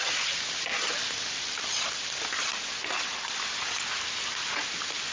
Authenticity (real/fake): real